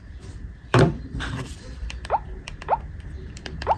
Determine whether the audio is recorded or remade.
remade